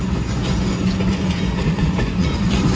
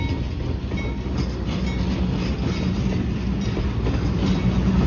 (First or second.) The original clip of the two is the second